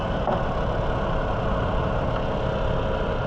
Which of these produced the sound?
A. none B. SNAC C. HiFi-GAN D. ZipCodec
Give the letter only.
A